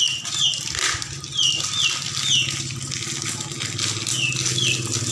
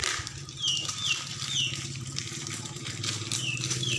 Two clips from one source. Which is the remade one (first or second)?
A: second